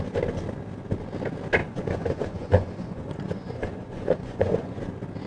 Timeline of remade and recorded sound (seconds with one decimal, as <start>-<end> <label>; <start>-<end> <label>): 0.0-1.6 recorded; 1.6-4.8 remade; 4.8-5.3 recorded